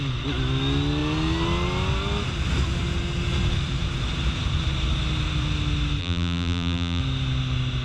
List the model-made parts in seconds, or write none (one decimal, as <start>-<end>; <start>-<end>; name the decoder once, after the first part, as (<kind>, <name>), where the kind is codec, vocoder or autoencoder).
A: 6.0-7.0 (vocoder, BigVGAN v2)